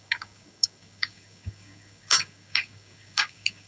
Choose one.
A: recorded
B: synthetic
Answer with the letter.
B